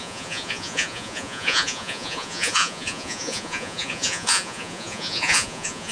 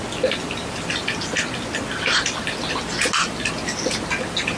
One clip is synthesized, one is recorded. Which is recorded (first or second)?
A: second